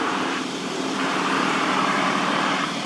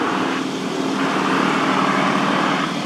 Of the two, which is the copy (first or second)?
first